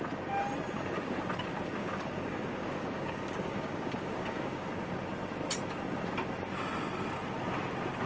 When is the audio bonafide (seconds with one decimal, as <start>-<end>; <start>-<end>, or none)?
0.0-1.8; 4.7-8.1

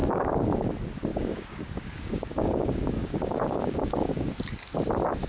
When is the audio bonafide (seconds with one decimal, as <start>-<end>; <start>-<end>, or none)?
0.7-1.1; 4.3-5.3

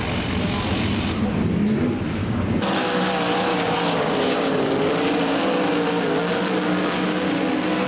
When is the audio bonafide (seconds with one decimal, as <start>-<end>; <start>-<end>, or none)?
0.0-2.2; 3.0-3.5; 4.5-6.8; 7.4-7.9

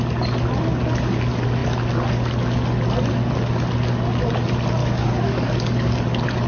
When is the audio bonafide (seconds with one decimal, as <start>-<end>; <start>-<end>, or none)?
0.0-4.8; 6.0-6.5

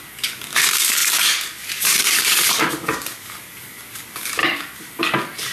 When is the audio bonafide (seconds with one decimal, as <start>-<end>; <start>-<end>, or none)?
none

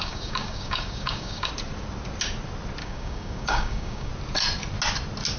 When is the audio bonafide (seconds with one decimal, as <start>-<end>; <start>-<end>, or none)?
1.5-2.8; 4.1-5.4

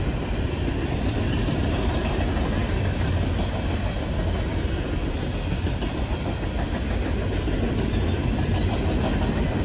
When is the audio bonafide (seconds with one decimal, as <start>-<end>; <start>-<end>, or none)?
0.0-9.6

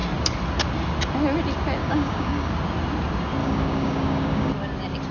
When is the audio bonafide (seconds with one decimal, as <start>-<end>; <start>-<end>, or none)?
0.0-1.8; 2.5-3.4; 4.5-5.1